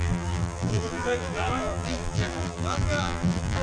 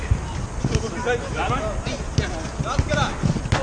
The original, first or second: second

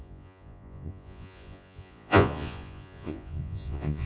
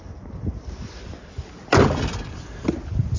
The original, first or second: second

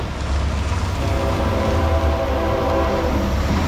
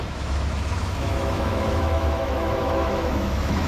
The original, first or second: first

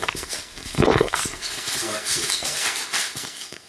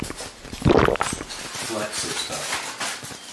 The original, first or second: second